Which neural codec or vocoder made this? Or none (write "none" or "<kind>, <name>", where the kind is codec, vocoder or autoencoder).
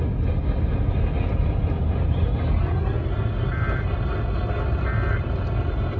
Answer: none